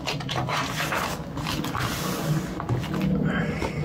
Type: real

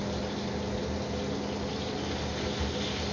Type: real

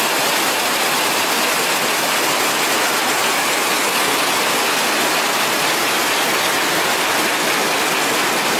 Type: real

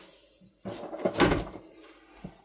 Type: real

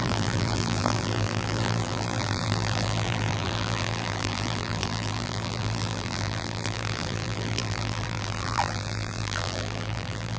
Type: fake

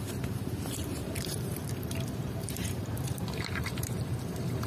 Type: fake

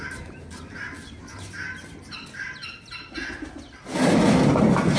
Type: real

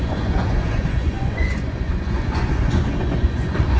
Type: fake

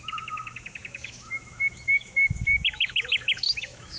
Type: fake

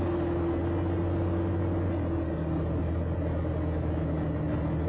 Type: real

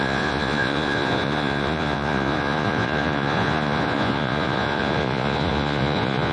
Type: fake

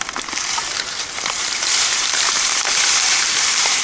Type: fake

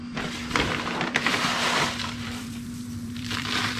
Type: fake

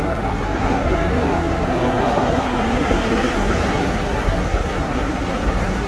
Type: fake